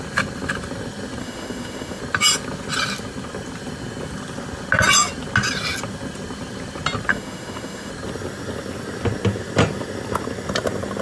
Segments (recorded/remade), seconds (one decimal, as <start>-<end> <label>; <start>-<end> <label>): 0.0-1.2 recorded; 1.2-2.0 remade; 2.0-7.1 recorded; 7.1-7.9 remade; 7.9-11.0 recorded